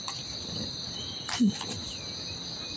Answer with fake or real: real